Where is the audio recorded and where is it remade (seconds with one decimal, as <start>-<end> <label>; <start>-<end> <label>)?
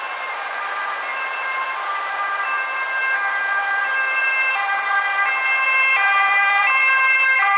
0.0-1.1 remade; 1.1-2.0 recorded; 2.0-7.6 remade